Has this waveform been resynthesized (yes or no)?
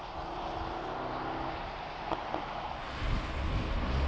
no